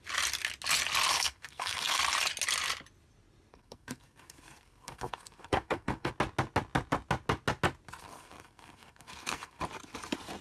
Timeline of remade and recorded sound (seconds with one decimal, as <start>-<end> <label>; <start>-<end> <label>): 0.0-1.1 recorded; 1.1-2.0 remade; 2.0-3.5 recorded; 3.5-6.1 remade; 6.1-8.0 recorded; 8.0-9.6 remade; 9.6-10.4 recorded